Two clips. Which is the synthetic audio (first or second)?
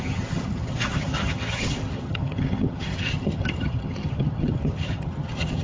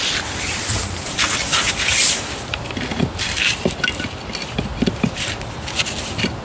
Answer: first